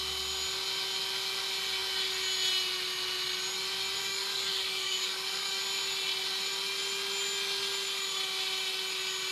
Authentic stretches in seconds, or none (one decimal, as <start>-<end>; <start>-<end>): 0.0-4.0; 5.6-9.3